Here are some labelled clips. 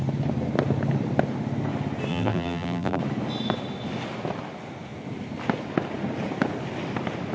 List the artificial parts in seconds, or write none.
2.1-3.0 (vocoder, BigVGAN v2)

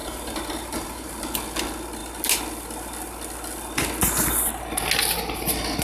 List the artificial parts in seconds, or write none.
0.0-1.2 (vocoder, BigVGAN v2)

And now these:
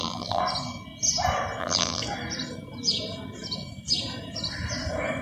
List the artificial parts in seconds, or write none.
0.0-0.4 (vocoder, BigVGAN v2); 1.6-2.0

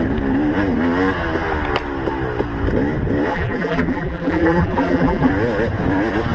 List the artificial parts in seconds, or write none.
3.3-5.3 (vocoder, BigVGAN v2)

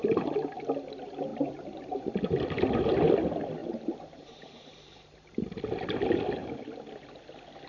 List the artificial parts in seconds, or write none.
1.3-2.0 (vocoder, BigVGAN v2); 3.6-5.4

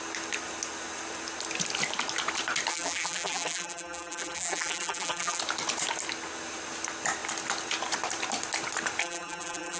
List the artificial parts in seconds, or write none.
2.7-5.4 (vocoder, BigVGAN v2); 9.0-9.8